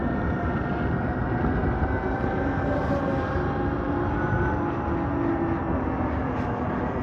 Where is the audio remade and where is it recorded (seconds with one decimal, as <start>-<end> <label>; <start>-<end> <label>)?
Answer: 0.0-7.0 recorded